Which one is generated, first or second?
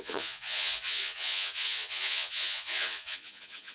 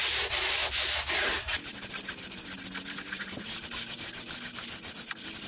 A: first